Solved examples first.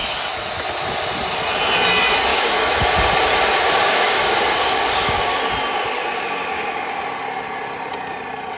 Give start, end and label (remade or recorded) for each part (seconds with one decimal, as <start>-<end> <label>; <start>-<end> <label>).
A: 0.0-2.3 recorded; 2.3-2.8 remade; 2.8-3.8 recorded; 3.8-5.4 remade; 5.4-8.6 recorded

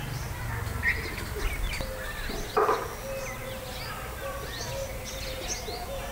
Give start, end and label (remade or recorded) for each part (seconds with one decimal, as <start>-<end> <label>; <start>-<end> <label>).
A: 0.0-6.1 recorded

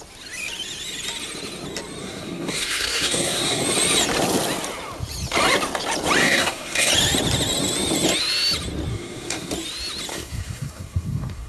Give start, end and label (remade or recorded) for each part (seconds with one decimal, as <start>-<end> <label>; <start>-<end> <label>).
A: 0.0-2.0 recorded; 2.0-3.6 remade; 3.6-6.2 recorded; 6.2-6.9 remade; 6.9-8.9 recorded; 8.9-9.5 remade; 9.5-10.1 recorded; 10.1-11.5 remade

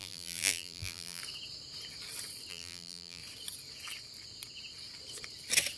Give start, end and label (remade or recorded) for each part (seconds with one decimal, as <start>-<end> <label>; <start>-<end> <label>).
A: 0.0-1.2 remade; 1.2-2.5 recorded; 2.5-3.2 remade; 3.2-5.8 recorded

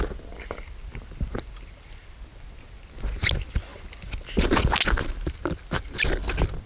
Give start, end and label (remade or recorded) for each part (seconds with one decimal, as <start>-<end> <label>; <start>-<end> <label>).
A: 0.0-6.7 recorded

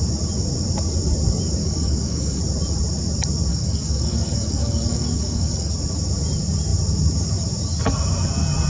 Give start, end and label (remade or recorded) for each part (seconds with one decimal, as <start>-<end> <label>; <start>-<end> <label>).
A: 0.0-1.6 recorded; 1.6-2.4 remade; 2.4-3.5 recorded; 3.5-5.7 remade; 5.7-8.7 recorded

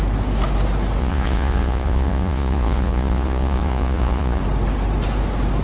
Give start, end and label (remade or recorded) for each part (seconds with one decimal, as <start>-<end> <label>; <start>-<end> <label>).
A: 0.0-1.0 recorded; 1.0-4.4 remade; 4.4-5.6 recorded